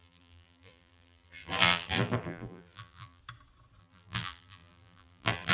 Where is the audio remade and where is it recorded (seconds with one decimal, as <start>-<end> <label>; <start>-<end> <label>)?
0.0-3.2 remade; 3.2-3.8 recorded; 3.8-5.5 remade